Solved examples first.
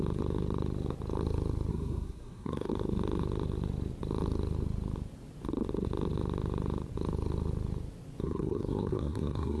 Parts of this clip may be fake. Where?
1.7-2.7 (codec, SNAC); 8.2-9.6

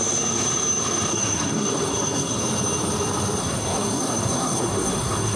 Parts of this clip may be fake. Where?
1.1-2.4 (codec, SNAC); 3.4-5.4